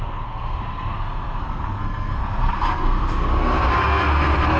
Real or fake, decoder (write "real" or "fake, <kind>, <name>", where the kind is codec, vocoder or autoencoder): fake, codec, SNAC